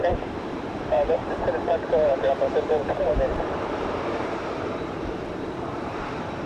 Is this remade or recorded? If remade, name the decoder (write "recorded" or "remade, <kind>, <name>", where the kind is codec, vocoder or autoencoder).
remade, vocoder, BigVGAN v2